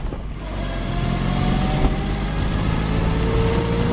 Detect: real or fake real